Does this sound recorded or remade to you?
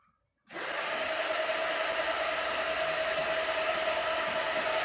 recorded